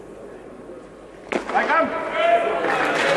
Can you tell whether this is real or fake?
real